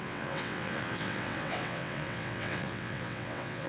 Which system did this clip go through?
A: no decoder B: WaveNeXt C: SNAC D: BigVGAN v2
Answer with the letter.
B